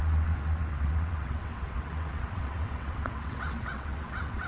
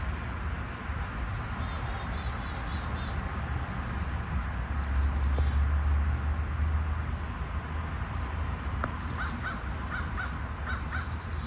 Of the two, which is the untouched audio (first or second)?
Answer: second